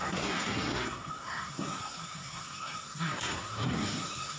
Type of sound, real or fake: fake